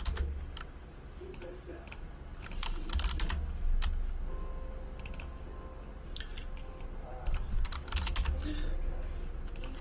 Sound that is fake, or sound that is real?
real